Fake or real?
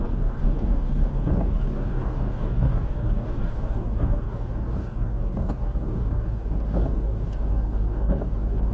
fake